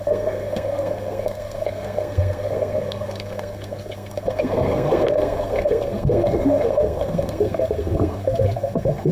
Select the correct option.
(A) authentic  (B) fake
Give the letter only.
B